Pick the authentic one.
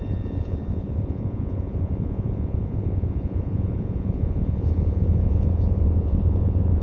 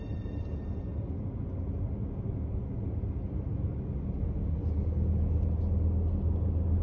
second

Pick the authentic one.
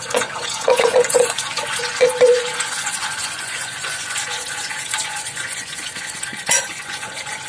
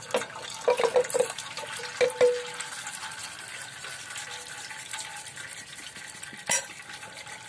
second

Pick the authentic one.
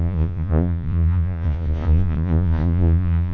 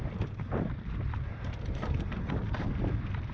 second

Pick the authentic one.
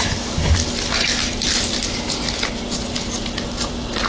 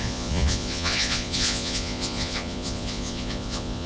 first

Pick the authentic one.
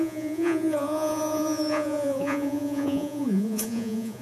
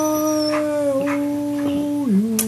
second